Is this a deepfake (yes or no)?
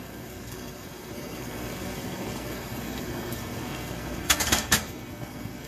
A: yes